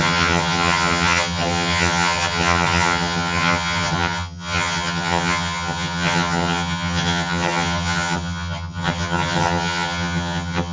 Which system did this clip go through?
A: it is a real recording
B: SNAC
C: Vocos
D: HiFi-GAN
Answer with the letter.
D